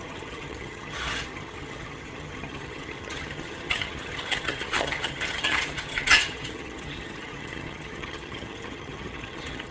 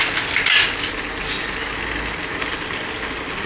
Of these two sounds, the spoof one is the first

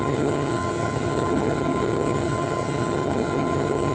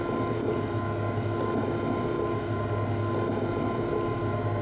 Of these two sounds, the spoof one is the first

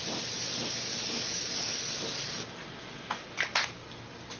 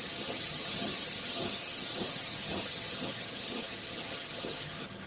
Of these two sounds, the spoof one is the second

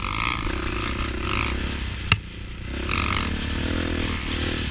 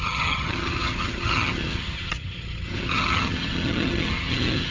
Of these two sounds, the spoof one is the second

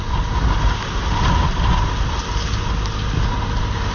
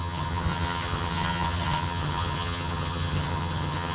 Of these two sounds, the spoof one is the second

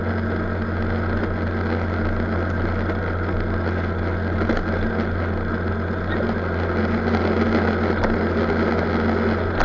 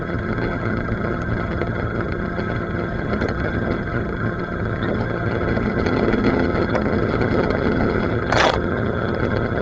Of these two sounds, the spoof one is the second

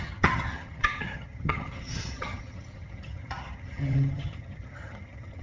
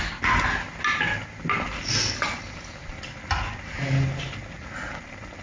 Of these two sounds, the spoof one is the first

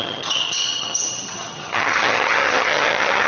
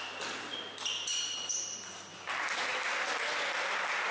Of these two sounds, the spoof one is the first